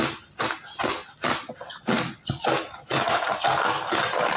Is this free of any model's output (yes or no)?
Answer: yes